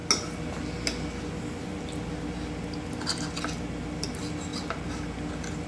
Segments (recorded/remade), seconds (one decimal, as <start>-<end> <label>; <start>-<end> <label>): 0.0-5.7 recorded